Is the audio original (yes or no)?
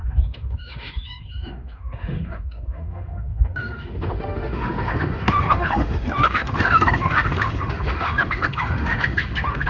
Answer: no